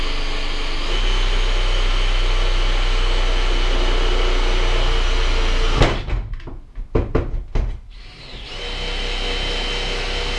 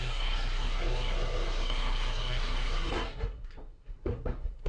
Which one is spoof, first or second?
second